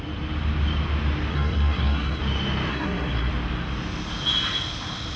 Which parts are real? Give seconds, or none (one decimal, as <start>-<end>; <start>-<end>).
0.0-1.3; 2.2-2.7; 3.3-5.2

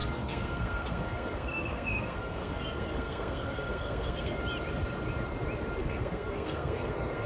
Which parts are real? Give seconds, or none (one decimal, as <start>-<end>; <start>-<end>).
4.4-5.8

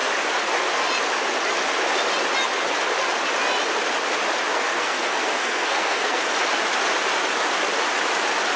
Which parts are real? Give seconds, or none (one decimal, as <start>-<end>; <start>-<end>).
0.0-4.5; 6.2-8.6

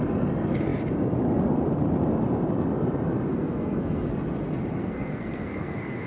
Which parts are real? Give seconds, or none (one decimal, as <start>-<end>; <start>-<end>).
0.0-3.3; 4.1-4.8

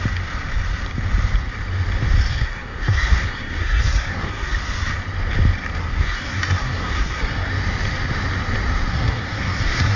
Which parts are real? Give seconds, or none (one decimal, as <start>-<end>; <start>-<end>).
0.0-2.3; 4.6-5.8; 7.5-8.9

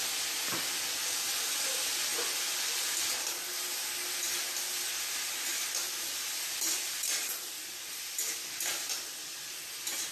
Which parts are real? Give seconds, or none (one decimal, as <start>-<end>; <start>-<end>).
0.0-10.1

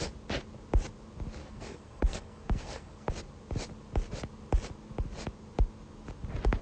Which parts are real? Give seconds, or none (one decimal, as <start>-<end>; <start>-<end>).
0.0-1.4; 3.1-6.6

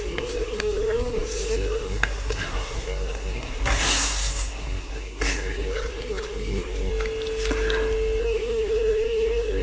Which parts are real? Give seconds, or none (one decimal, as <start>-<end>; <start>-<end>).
6.9-8.2